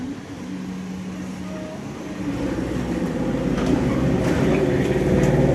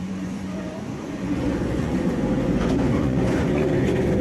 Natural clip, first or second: first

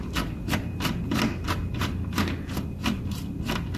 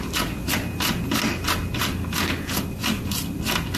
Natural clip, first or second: second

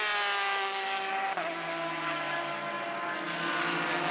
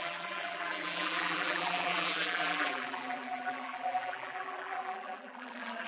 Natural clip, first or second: first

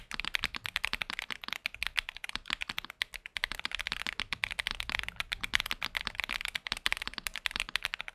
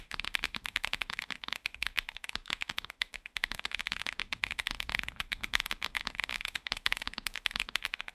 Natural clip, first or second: first